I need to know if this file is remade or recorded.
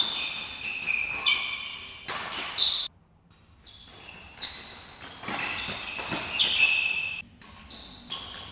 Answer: recorded